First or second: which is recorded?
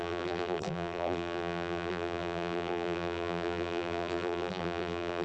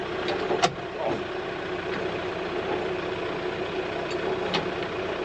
second